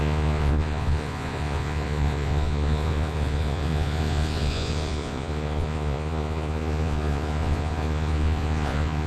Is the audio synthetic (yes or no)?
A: yes